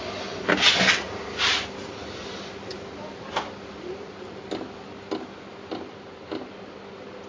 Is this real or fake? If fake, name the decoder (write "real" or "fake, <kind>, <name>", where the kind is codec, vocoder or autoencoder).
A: real